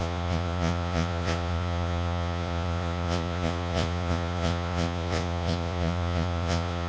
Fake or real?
fake